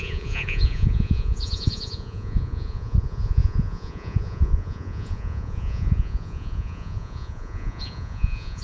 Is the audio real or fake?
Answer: fake